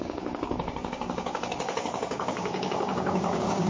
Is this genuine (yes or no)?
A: no